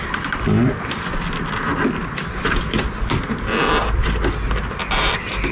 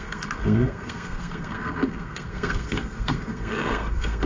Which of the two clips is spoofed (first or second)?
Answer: second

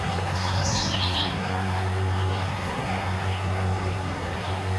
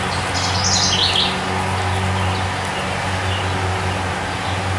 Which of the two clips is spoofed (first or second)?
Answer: first